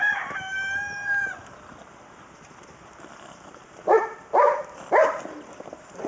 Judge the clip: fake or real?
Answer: fake